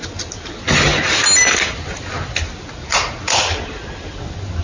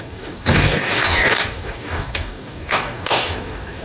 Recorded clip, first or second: first